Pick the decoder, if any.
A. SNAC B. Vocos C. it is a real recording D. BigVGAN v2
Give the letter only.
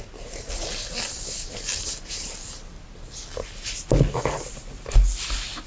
C